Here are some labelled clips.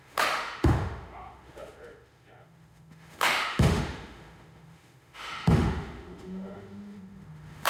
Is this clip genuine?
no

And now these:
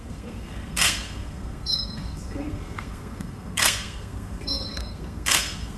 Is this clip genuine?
no